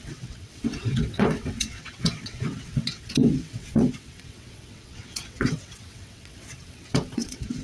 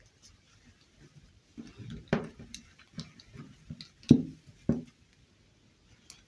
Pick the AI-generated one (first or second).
first